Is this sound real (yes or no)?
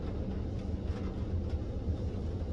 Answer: yes